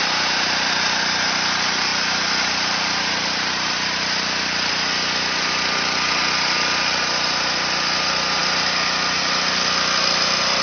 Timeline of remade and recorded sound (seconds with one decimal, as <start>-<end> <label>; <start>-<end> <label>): 0.0-10.6 recorded